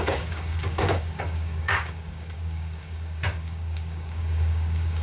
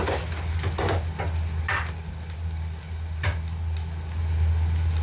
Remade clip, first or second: first